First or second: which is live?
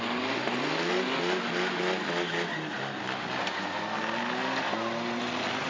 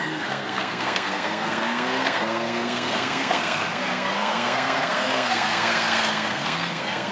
first